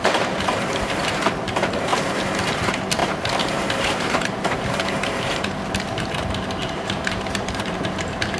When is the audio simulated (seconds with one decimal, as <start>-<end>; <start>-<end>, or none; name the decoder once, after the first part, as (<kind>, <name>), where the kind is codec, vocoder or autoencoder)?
0.0-1.9 (vocoder, BigVGAN v2); 2.6-8.4